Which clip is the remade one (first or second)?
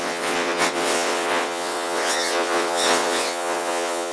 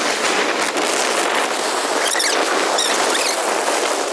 first